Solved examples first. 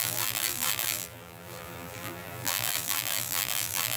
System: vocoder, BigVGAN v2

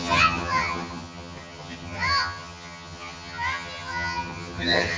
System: vocoder, HiFi-GAN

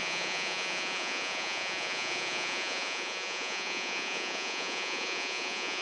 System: vocoder, Vocos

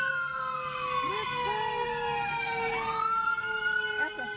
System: codec, DAC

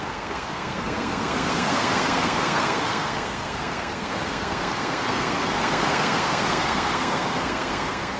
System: codec, SNAC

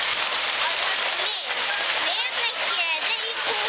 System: none